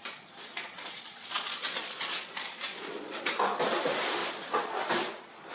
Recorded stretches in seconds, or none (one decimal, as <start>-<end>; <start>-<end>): 3.3-4.2; 4.8-5.5